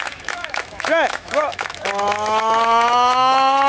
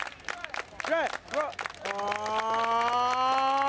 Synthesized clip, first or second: first